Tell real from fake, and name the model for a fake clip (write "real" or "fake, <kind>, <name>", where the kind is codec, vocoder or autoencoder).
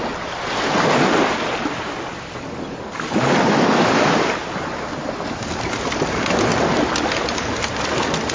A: real